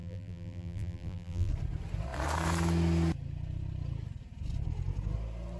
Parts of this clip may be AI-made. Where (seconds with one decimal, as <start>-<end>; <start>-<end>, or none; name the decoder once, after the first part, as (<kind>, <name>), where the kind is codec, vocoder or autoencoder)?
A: 0.0-1.5 (vocoder, BigVGAN v2)